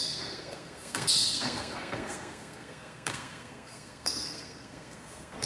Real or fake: fake